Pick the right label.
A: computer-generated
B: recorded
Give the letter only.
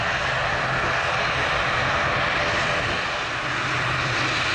B